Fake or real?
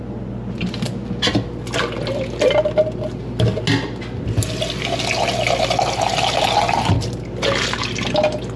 real